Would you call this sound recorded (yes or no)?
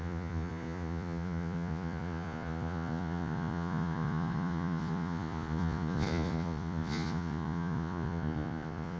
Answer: no